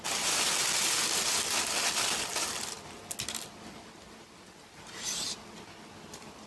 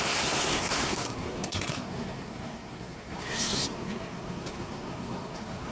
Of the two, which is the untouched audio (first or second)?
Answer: first